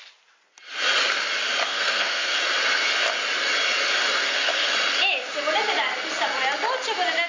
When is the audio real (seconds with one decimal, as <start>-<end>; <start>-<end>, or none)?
0.0-1.7; 2.4-4.2; 4.7-7.3